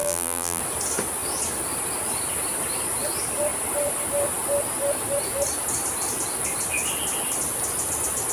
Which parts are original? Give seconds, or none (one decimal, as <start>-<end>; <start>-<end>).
0.6-8.3